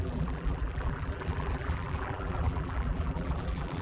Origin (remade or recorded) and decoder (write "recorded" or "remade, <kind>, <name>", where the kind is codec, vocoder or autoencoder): remade, vocoder, BigVGAN v2